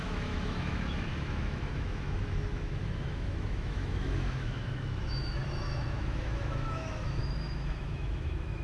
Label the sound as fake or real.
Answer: fake